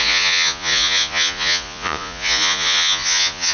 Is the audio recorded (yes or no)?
no